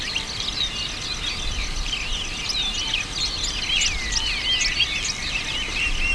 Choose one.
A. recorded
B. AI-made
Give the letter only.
A